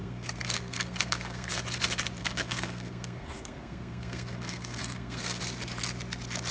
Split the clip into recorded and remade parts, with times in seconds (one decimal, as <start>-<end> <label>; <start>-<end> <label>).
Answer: 0.0-1.5 remade; 1.5-2.2 recorded; 2.2-5.4 remade; 5.4-6.5 recorded